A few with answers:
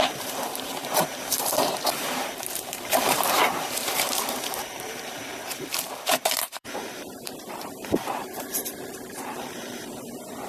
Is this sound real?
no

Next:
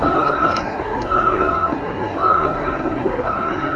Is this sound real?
no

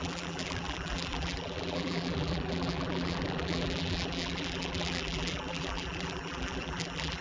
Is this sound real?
no